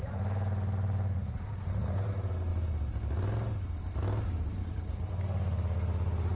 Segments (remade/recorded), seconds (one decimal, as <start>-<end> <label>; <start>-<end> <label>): 0.0-6.4 recorded